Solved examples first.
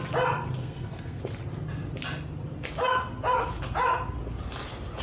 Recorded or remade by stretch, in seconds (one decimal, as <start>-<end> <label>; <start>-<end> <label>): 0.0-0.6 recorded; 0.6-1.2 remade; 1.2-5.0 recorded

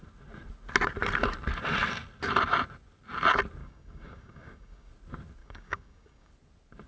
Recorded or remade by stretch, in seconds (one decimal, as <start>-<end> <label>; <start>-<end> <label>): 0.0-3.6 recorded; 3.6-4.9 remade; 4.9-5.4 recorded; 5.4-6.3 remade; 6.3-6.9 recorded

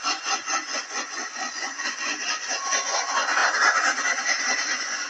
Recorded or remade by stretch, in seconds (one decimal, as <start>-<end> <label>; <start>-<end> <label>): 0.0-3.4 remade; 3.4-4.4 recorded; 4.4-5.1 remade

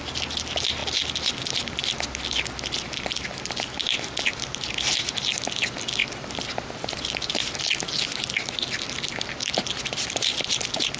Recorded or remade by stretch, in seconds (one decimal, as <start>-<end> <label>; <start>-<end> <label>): 0.0-11.0 recorded

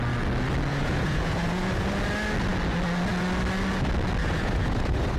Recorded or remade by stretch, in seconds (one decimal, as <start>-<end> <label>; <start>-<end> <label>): 0.0-0.7 recorded; 0.7-1.9 remade; 1.9-4.2 recorded; 4.2-5.2 remade